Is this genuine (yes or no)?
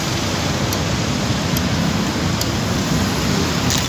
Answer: yes